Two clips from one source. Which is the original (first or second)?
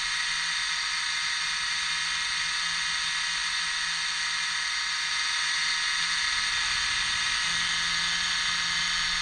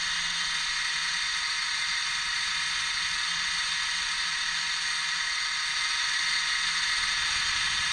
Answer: first